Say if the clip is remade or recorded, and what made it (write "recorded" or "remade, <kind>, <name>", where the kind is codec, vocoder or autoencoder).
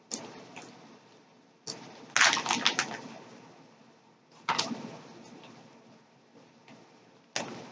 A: recorded